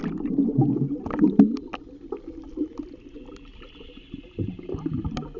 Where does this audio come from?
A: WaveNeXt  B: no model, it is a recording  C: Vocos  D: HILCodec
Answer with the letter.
B